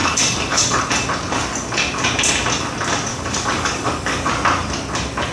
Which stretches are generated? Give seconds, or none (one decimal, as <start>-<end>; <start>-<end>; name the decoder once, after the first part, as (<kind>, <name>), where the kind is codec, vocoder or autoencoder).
0.0-0.8 (codec, DAC); 3.1-4.3